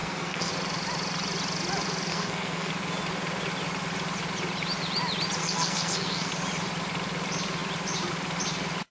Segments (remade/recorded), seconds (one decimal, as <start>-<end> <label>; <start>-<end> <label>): 0.0-0.5 remade; 0.5-2.1 recorded; 2.1-2.7 remade; 2.7-5.4 recorded; 5.4-6.3 remade; 6.3-8.9 recorded